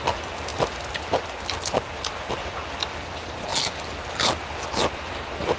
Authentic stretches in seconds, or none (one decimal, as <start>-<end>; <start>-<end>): 0.0-5.6